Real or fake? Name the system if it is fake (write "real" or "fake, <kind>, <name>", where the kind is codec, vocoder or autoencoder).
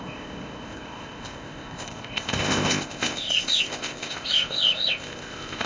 fake, codec, ZipCodec